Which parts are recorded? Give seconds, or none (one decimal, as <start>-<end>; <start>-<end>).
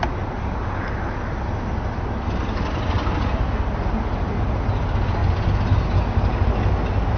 0.0-7.2